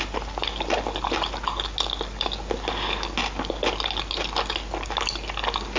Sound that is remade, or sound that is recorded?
recorded